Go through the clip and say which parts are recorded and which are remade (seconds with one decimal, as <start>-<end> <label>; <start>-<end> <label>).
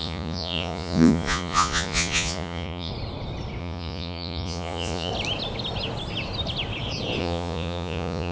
0.0-2.9 remade; 2.9-3.6 recorded; 3.6-5.1 remade; 5.1-7.2 recorded; 7.2-8.3 remade